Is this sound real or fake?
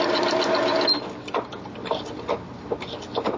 real